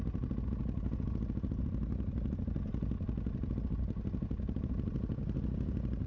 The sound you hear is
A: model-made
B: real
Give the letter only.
B